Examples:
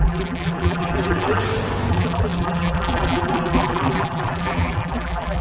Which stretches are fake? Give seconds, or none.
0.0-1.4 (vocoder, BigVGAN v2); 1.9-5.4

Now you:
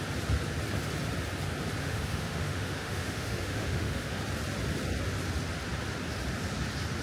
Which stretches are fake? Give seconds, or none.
1.8-4.2 (autoencoder, DAC-VAE)

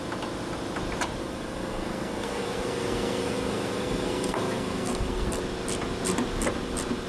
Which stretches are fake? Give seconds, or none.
1.2-5.4 (codec, SNAC)

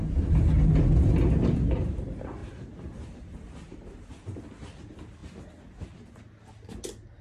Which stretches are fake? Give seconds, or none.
2.4-4.4 (vocoder, BigVGAN v2)

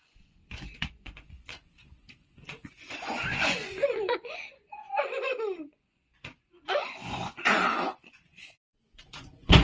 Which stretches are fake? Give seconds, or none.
0.0-9.6 (vocoder, Vocos)

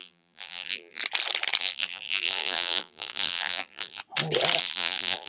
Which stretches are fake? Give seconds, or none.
0.0-1.0 (vocoder, BigVGAN v2); 1.6-4.0; 4.6-5.3